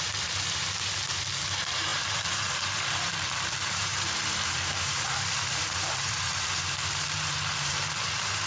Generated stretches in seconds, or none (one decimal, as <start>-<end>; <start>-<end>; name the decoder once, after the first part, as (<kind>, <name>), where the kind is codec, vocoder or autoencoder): 0.0-8.5 (vocoder, BigVGAN v2)